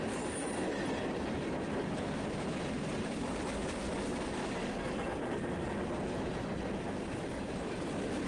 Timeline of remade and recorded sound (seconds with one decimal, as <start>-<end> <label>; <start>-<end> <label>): 0.0-8.3 recorded